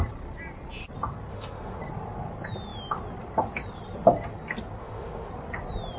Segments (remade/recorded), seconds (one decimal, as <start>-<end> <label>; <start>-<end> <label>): 0.0-1.3 recorded; 1.3-1.8 remade; 1.8-4.8 recorded; 4.8-5.3 remade; 5.3-6.0 recorded